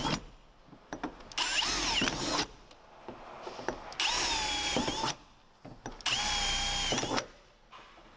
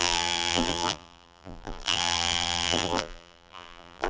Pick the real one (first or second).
first